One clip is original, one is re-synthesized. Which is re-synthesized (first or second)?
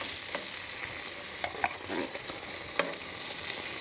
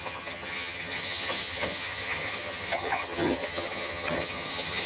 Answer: second